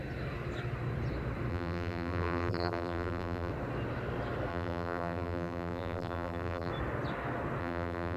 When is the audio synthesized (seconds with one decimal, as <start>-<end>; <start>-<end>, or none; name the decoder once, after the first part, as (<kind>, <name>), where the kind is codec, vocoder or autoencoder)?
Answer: 1.5-3.5 (vocoder, BigVGAN v2); 4.5-6.7; 7.6-8.2